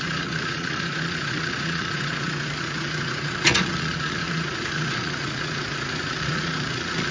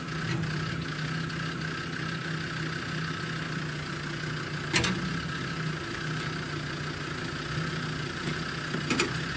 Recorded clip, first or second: second